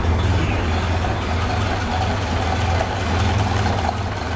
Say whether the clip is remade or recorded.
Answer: recorded